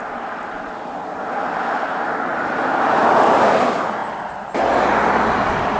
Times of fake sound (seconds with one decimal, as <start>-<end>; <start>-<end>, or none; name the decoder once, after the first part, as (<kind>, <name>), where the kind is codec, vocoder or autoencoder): none